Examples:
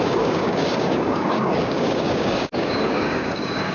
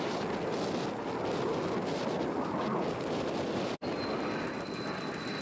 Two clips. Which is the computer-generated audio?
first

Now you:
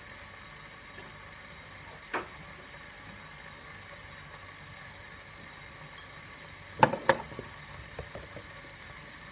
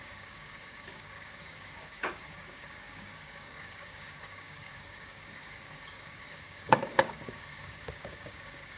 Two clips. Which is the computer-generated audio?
second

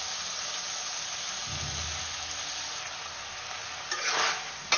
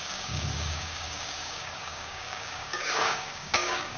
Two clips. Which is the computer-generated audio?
second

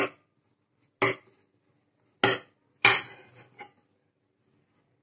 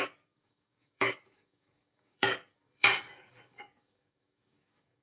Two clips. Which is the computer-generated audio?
second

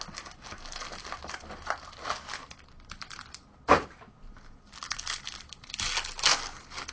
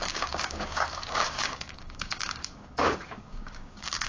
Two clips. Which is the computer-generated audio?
second